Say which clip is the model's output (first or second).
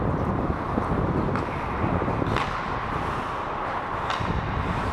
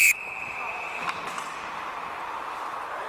second